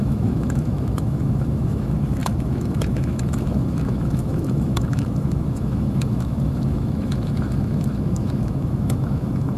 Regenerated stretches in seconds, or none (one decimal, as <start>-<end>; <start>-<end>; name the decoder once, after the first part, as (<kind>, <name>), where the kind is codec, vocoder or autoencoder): 0.0-9.6 (autoencoder, DAC-VAE)